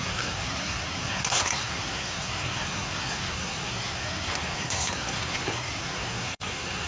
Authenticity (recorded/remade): remade